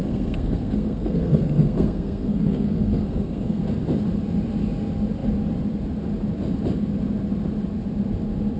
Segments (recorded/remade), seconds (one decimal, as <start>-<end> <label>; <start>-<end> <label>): 0.0-3.6 remade; 3.6-8.6 recorded